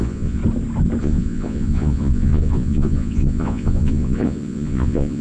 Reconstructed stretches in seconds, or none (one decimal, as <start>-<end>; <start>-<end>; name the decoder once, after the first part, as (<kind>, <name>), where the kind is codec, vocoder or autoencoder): 0.0-0.4 (vocoder, Vocos); 1.0-5.2